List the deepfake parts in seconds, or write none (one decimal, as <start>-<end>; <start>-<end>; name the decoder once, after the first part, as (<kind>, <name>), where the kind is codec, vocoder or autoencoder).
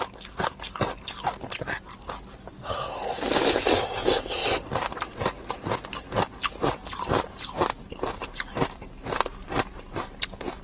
6.6-7.6 (vocoder, BigVGAN v2)